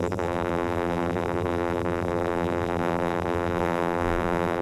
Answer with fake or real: fake